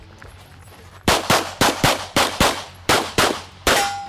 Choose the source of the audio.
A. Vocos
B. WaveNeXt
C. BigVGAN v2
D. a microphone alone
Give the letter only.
C